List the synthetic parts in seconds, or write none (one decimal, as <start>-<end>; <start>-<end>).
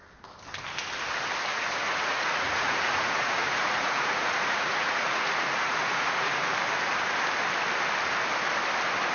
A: 1.5-6.3